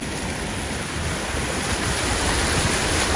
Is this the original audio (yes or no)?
yes